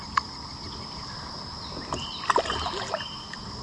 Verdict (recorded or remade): recorded